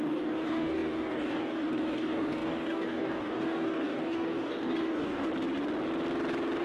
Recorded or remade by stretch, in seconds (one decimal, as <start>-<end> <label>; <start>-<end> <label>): 0.0-5.3 remade; 5.3-6.6 recorded